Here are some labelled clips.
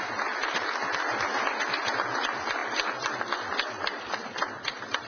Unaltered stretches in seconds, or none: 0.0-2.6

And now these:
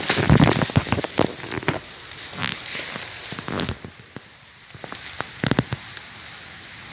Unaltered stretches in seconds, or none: 0.0-2.4; 3.4-6.9

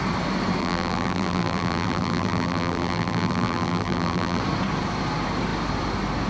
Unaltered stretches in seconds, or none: 0.0-0.6; 4.4-6.3